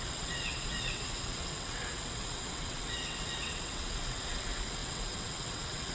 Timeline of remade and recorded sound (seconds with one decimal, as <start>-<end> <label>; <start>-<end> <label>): 0.0-5.9 remade